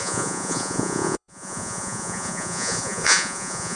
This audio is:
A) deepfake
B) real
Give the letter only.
A